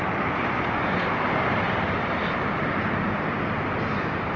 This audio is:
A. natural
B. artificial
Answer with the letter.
A